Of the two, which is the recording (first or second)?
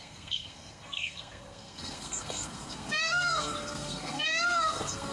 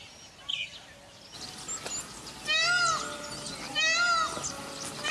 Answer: second